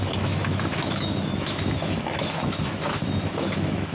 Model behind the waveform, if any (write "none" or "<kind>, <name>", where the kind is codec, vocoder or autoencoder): autoencoder, DAC-VAE